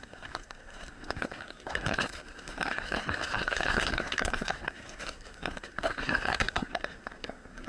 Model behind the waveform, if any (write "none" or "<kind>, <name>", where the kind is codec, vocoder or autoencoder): codec, SNAC